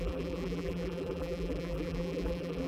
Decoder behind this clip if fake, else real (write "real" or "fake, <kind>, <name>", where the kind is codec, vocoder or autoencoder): fake, vocoder, BigVGAN v2